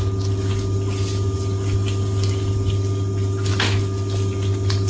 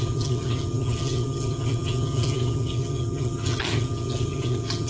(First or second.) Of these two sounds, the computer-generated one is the second